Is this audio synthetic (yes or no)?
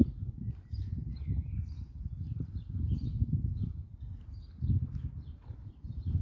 yes